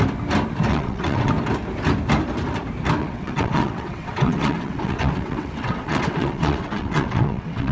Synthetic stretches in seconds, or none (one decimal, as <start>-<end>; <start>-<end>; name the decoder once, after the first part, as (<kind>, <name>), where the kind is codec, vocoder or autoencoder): 0.7-1.3 (vocoder, WaveNeXt); 3.0-7.7